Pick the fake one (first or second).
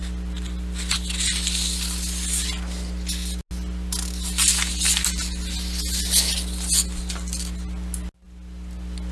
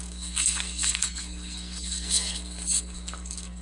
second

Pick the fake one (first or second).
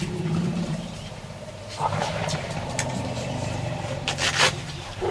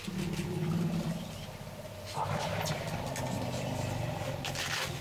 first